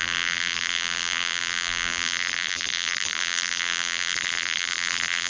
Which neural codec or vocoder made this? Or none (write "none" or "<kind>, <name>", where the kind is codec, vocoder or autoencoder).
vocoder, BigVGAN v2